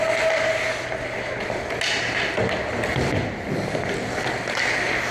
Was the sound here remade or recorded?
recorded